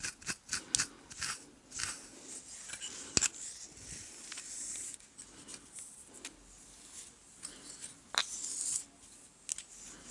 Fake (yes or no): no